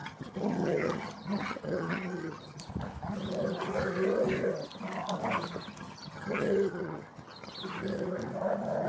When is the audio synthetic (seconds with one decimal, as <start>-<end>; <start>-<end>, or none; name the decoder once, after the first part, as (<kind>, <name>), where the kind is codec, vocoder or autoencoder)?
0.0-2.6 (vocoder, HiFi-GAN); 5.7-7.5